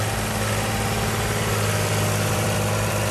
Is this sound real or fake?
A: fake